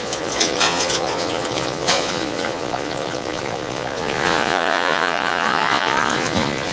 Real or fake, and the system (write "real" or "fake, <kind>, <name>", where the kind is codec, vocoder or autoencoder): fake, vocoder, Vocos